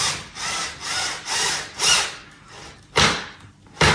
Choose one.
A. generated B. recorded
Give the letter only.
B